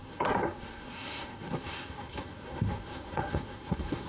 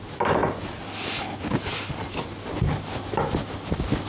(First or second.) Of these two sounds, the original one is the second